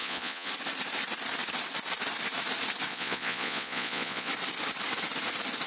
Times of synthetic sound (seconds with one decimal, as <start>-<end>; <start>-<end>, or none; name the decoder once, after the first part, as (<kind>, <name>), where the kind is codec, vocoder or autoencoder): 0.0-0.5 (vocoder, Vocos); 2.9-4.3